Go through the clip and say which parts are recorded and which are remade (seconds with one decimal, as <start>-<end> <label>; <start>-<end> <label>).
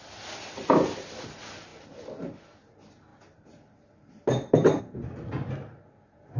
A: 0.0-3.1 recorded; 3.1-4.8 remade; 4.8-6.4 recorded